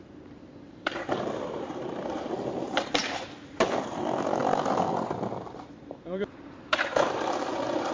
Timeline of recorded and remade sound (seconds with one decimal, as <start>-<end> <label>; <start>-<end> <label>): 0.0-4.4 remade; 4.4-5.7 recorded; 5.7-7.9 remade